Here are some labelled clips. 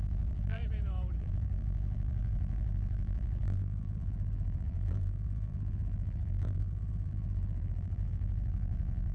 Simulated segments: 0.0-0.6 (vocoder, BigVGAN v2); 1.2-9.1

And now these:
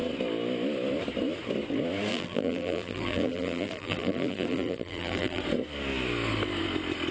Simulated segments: 2.1-5.4 (vocoder, BigVGAN v2)

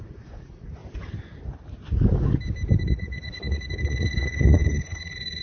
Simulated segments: 0.0-0.8 (vocoder, Vocos); 2.8-5.4

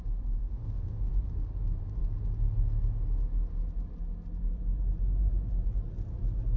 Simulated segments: 0.4-1.1 (autoencoder, DAC-VAE)

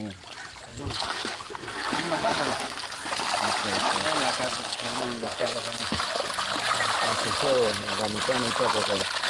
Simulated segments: 0.7-3.1 (codec, SNAC); 4.7-6.0

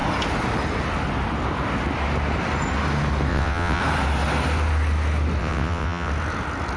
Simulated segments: 3.3-3.8 (vocoder, WaveNeXt); 5.4-6.1

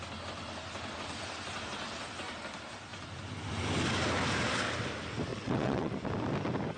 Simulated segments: 5.3-5.9 (vocoder, WaveNeXt)

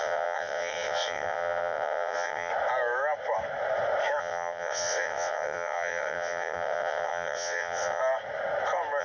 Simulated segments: 0.0-2.5 (vocoder, WaveNeXt); 4.2-8.0